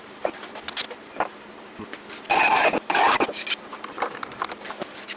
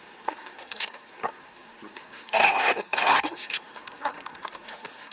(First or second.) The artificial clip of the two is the second